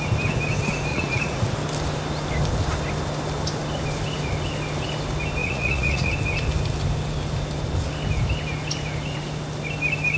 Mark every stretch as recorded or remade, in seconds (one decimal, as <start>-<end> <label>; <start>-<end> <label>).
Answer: 0.0-0.9 recorded; 0.9-1.5 remade; 1.5-5.4 recorded; 5.4-6.1 remade; 6.1-10.2 recorded